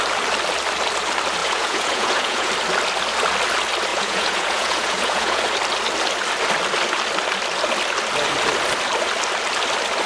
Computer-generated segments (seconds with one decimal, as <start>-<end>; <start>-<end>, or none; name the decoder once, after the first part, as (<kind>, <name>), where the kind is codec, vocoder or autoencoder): 1.4-2.5 (vocoder, Vocos); 3.9-5.4